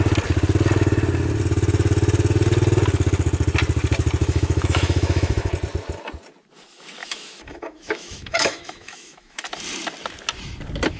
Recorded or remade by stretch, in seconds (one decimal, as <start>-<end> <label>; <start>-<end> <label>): 0.0-4.2 recorded; 4.2-5.5 remade; 5.5-7.0 recorded; 7.0-9.5 remade; 9.5-11.0 recorded